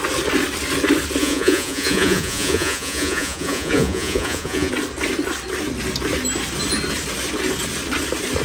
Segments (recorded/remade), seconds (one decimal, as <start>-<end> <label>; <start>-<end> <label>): 0.0-1.2 recorded; 1.2-4.7 remade; 4.7-8.4 recorded